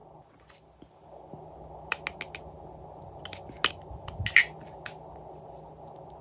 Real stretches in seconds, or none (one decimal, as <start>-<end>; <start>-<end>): 0.0-6.2